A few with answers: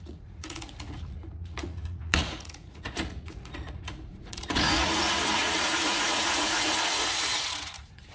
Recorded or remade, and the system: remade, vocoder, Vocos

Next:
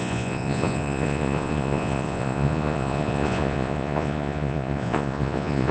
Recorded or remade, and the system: remade, vocoder, Vocos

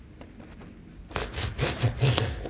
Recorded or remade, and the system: recorded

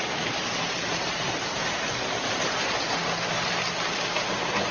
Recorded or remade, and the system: recorded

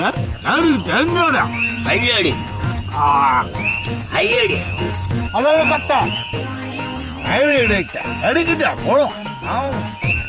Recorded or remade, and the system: remade, vocoder, Vocos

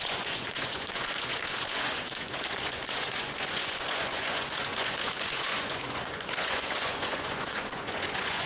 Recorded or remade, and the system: remade, vocoder, Vocos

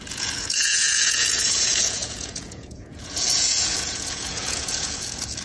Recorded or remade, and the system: remade, vocoder, Vocos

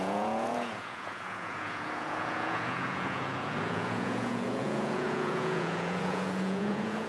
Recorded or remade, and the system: remade, vocoder, Vocos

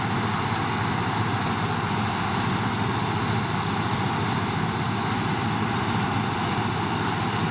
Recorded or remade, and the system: recorded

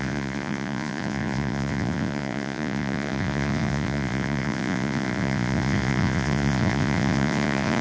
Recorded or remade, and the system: remade, vocoder, Vocos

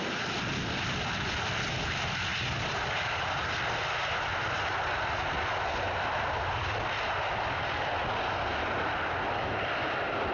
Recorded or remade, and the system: recorded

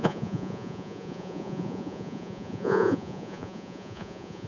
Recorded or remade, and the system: remade, vocoder, Vocos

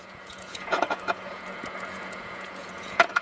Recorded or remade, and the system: remade, vocoder, Vocos